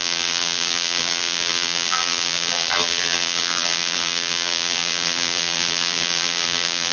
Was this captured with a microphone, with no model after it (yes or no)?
no